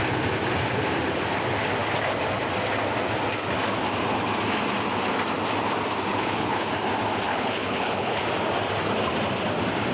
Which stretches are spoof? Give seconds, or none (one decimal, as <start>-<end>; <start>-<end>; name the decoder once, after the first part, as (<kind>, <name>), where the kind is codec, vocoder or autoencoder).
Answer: 6.1-6.7 (codec, HILCodec); 7.3-8.2